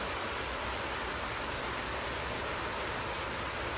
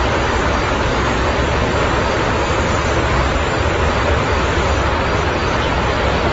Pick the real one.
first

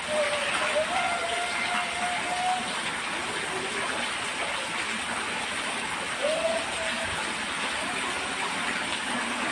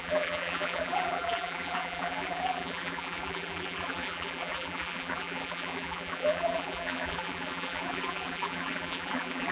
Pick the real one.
first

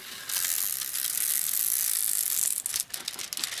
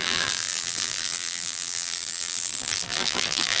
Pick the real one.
first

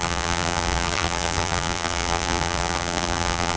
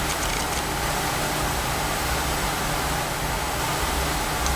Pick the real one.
second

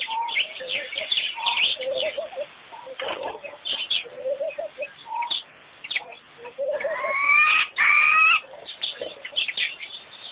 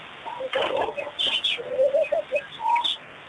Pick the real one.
second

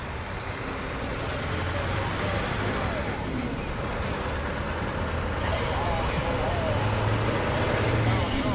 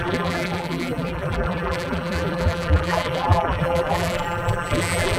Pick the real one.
first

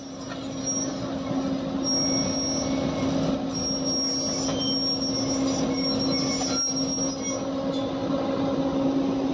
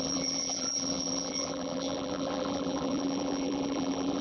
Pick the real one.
first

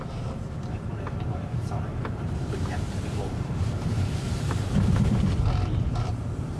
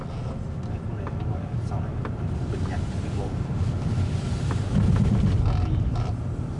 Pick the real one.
second